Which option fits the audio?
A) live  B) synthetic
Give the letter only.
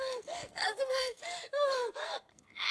B